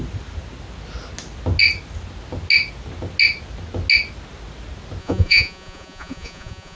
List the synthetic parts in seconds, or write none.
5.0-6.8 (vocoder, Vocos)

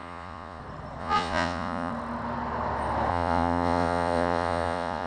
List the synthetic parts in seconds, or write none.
0.0-0.6 (vocoder, Vocos); 1.0-1.9; 3.1-5.1

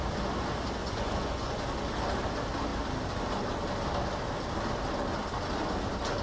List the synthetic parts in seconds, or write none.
0.8-1.6 (vocoder, Vocos)

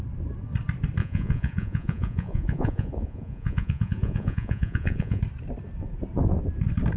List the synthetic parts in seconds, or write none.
1.0-5.2 (vocoder, Vocos)

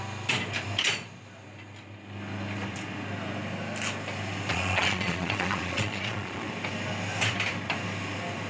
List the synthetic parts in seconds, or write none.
4.5-6.5 (vocoder, Vocos)

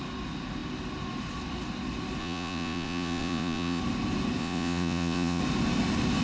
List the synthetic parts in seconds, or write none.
2.2-3.8 (vocoder, Vocos); 4.4-5.4